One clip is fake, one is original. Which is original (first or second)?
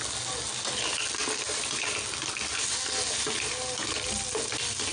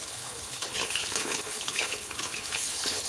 first